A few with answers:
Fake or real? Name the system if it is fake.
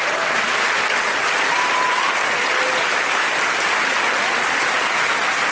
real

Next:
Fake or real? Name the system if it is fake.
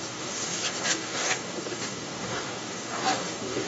fake, codec, DAC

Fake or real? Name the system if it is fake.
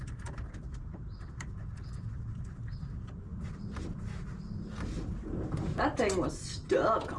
fake, vocoder, BigVGAN v2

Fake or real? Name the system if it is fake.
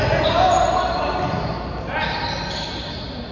real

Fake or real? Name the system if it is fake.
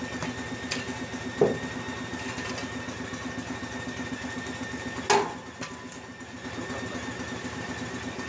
real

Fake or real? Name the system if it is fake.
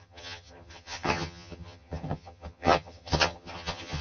fake, vocoder, HiFi-GAN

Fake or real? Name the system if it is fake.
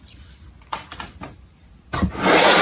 real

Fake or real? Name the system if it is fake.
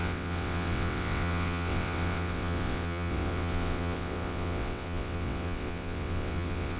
fake, vocoder, WaveNeXt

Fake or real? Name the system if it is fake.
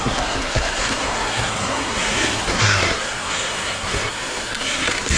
fake, codec, SNAC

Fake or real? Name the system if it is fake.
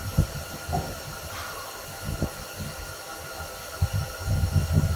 real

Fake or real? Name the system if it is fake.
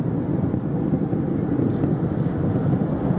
real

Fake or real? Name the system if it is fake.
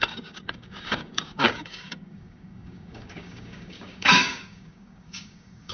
fake, codec, DAC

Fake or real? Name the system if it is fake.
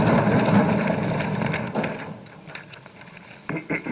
real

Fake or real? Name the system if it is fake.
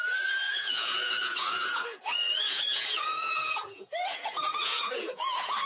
fake, vocoder, Vocos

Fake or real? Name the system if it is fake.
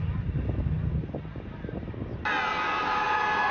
real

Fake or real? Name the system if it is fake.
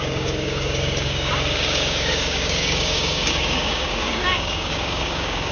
fake, codec, DAC